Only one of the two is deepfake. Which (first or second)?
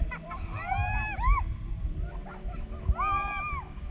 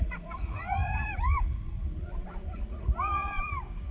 second